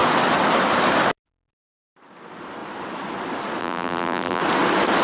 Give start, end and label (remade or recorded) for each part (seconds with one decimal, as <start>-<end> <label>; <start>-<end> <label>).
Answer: 0.0-3.6 recorded; 3.6-4.4 remade; 4.4-5.0 recorded